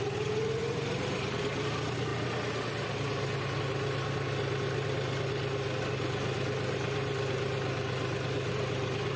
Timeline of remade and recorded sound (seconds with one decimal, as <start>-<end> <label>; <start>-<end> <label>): 0.0-0.6 recorded; 0.6-1.4 remade; 1.4-9.2 recorded